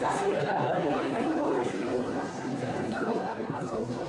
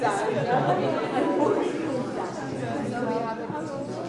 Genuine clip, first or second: second